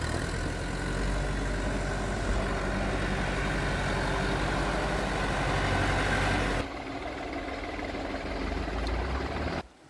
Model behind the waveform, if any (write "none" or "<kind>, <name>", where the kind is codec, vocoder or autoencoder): none